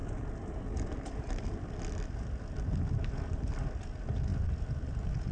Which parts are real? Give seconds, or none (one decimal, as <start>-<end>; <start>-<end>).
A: 0.0-5.3

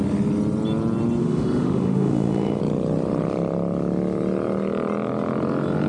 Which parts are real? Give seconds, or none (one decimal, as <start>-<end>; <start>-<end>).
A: 0.0-1.2; 2.6-5.9

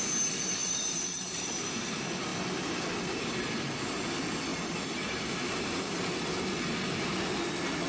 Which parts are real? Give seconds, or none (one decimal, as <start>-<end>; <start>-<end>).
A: 0.0-0.6; 1.9-4.5; 6.0-7.9

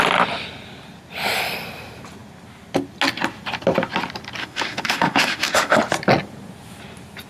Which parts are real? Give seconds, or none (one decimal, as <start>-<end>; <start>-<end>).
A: 0.0-4.4; 5.8-7.3

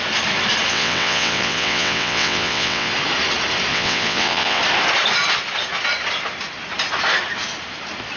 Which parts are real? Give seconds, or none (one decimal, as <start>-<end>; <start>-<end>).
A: 0.0-0.7; 2.9-3.7; 4.6-8.2

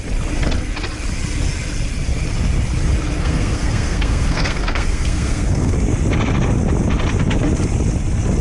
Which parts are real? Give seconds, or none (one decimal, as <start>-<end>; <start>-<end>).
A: 0.0-3.2; 5.7-8.4